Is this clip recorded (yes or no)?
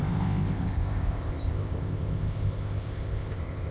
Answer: no